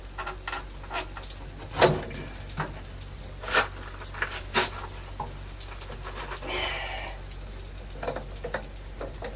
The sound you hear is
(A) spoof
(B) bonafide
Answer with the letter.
B